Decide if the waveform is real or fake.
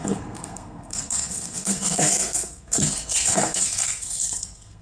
fake